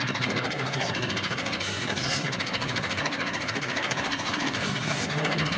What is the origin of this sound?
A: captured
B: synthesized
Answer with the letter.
B